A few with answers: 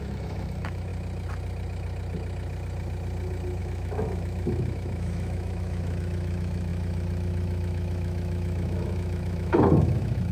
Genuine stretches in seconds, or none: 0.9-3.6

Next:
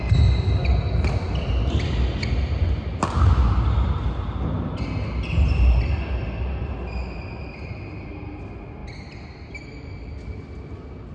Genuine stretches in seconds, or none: 0.0-11.1

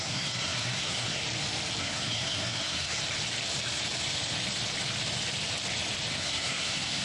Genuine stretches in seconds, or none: 1.2-1.8; 3.0-6.1

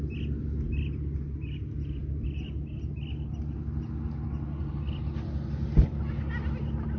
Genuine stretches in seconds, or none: 0.0-7.0

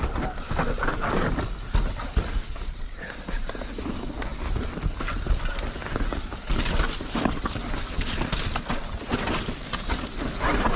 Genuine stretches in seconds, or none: 0.0-10.8